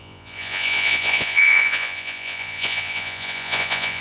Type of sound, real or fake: fake